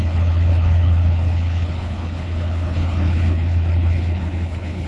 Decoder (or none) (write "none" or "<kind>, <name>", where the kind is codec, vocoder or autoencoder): codec, HILCodec